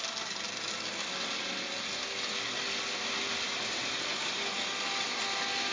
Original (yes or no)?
yes